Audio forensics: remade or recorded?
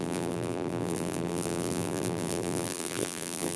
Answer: remade